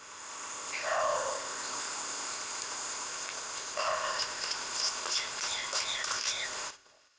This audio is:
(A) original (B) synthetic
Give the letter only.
B